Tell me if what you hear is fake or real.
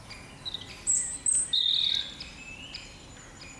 real